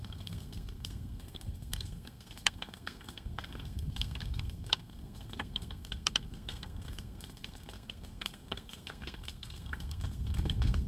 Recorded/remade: remade